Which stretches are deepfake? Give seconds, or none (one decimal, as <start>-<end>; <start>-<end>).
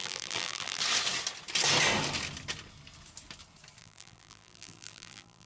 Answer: 0.0-0.8; 3.8-5.5